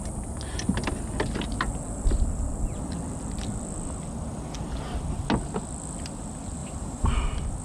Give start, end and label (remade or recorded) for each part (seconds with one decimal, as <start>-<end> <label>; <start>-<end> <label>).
0.0-6.6 recorded; 6.6-7.1 remade; 7.1-7.6 recorded